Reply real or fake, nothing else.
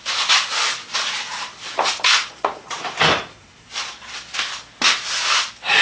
real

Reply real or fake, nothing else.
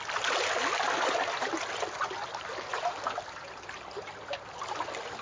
real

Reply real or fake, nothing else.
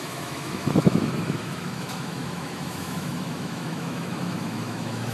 fake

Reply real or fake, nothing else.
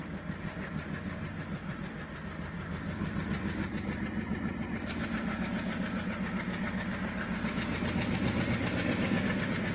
real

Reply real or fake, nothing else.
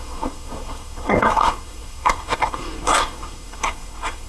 fake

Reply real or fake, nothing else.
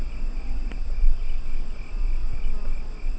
real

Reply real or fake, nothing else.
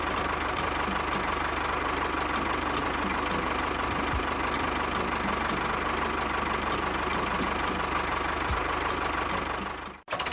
real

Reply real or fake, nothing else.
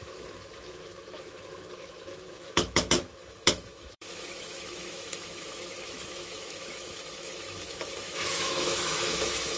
fake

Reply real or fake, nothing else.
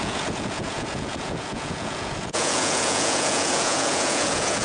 fake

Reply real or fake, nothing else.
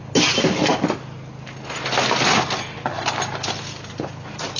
real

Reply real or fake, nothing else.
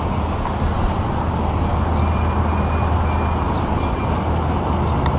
real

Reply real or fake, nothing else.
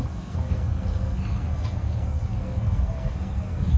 fake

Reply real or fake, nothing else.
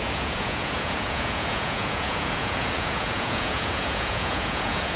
fake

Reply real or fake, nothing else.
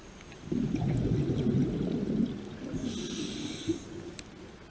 real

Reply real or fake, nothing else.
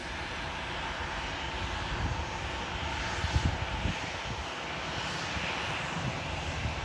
real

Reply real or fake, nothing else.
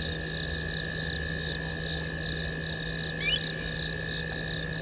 real